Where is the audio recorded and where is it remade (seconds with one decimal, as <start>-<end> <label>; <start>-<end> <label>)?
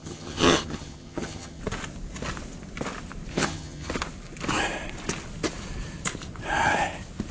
0.0-1.6 remade; 1.6-3.3 recorded; 3.3-3.9 remade; 3.9-7.3 recorded